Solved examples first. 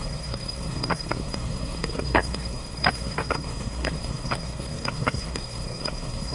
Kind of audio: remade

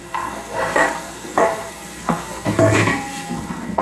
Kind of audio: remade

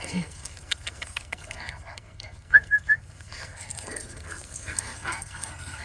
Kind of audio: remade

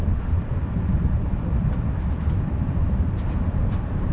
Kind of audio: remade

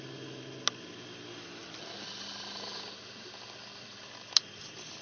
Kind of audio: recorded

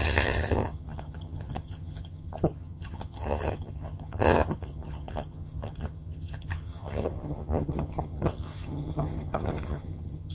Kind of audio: remade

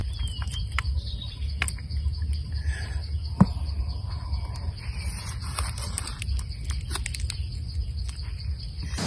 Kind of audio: recorded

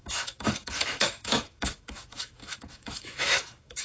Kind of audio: remade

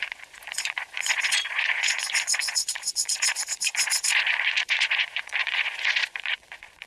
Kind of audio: remade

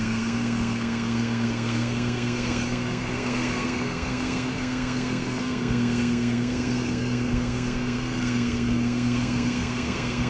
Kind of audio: remade